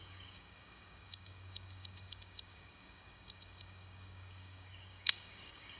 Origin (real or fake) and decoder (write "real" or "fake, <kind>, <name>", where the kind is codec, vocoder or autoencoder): fake, codec, DAC